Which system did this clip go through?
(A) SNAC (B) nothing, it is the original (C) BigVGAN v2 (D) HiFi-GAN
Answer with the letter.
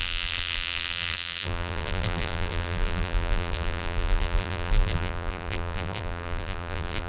C